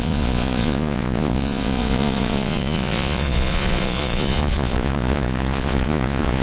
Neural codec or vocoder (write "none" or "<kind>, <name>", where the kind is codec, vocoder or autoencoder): vocoder, Vocos